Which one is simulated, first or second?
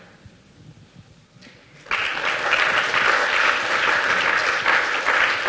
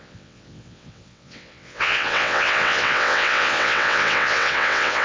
second